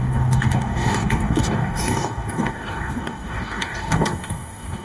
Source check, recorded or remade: remade